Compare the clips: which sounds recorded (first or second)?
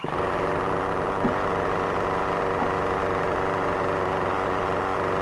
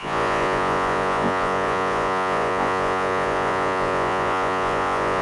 first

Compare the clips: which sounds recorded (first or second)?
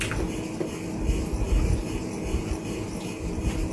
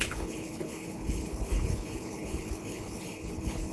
first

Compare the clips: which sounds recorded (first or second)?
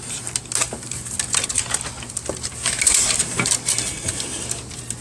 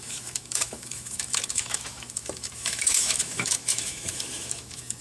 first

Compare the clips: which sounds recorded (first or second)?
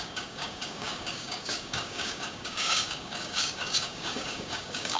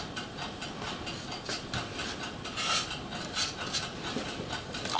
second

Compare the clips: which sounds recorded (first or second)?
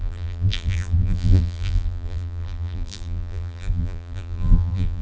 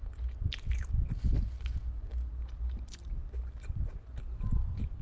second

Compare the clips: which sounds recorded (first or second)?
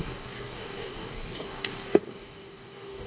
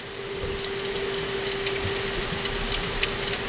second